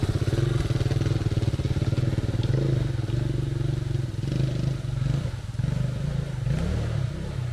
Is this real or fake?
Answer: real